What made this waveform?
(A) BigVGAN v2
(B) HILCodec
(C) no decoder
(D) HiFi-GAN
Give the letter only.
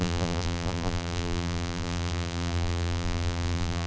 A